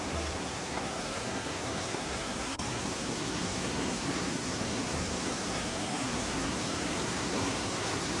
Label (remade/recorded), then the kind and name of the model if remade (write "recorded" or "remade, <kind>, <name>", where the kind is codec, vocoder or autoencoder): remade, codec, SNAC